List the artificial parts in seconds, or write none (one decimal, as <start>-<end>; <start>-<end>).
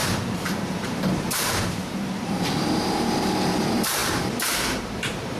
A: 0.0-5.4